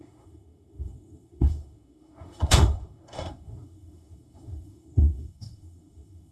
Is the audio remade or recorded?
remade